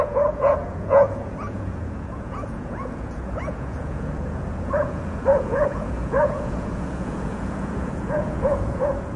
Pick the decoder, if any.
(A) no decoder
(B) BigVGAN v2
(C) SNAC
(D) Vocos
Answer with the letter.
D